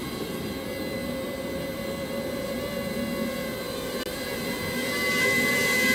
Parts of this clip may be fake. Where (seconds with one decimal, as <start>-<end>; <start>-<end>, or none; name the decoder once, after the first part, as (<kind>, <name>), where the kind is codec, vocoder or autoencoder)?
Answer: none